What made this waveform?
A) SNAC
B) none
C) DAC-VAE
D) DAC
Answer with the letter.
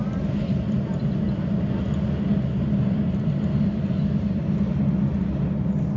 B